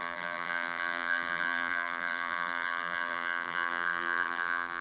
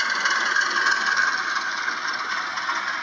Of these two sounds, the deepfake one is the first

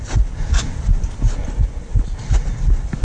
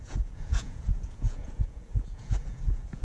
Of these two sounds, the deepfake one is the second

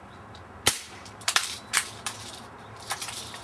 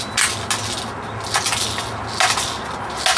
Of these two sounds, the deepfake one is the first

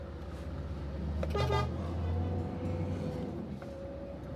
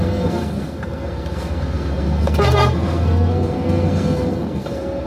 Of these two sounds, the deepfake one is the second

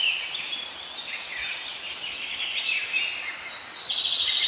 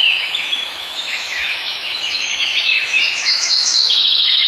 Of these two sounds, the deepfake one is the second